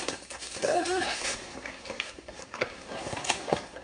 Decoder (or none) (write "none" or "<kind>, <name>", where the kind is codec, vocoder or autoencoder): codec, SNAC